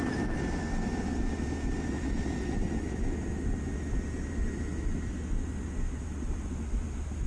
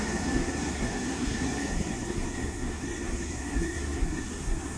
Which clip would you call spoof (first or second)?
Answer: second